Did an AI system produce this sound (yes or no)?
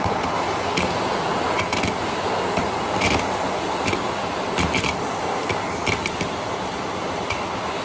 no